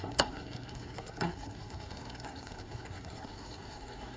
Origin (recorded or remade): remade